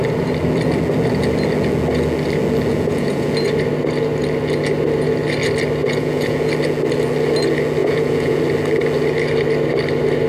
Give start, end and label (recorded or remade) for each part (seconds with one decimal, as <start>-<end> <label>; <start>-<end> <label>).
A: 0.0-2.7 recorded; 2.7-3.3 remade; 3.3-5.8 recorded; 5.8-6.5 remade; 6.5-7.8 recorded; 7.8-8.4 remade; 8.4-10.3 recorded